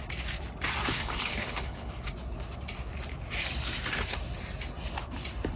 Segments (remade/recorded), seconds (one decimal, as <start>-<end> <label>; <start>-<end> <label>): 0.0-0.8 recorded; 0.8-2.1 remade; 2.1-5.6 recorded